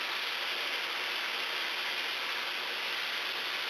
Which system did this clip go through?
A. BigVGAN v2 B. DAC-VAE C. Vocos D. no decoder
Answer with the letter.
D